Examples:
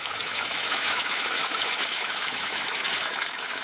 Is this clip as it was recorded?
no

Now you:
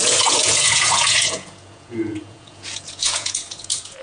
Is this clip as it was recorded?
no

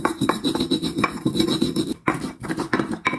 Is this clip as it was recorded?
no